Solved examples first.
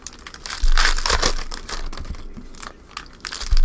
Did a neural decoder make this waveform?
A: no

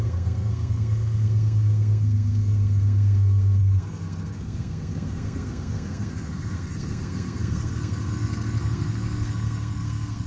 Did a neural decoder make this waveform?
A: yes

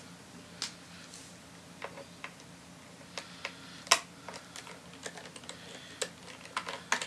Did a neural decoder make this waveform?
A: no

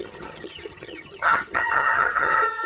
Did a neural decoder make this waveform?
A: yes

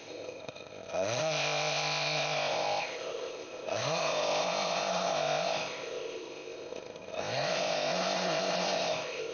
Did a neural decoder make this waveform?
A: yes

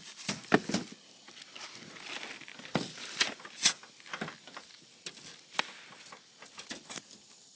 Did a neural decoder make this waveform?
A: no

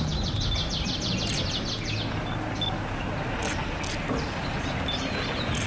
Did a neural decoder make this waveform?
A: no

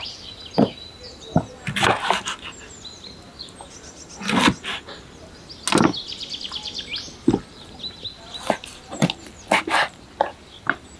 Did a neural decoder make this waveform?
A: no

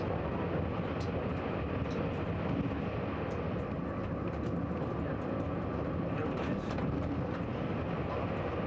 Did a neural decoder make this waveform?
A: no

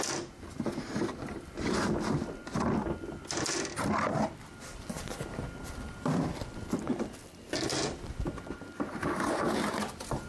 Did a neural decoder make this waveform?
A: no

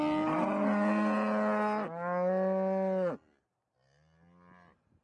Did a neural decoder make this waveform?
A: no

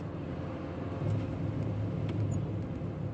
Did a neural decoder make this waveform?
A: no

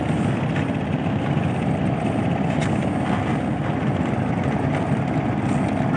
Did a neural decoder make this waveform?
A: no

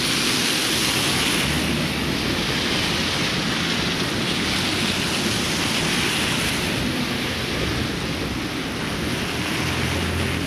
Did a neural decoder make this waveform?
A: no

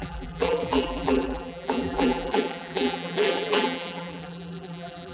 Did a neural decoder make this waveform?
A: yes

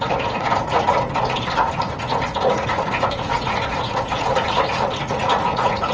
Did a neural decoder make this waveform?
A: yes